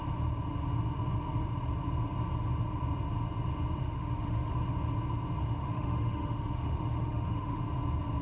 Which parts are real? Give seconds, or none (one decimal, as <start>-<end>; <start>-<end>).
0.0-3.8; 4.5-5.4; 7.6-8.2